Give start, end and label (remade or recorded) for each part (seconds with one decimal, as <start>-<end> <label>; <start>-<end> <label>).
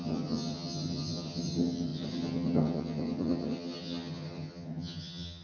0.0-5.4 remade